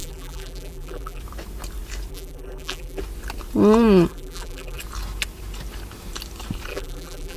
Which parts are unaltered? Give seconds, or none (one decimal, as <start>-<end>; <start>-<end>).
1.2-2.1; 3.0-4.1; 4.8-6.7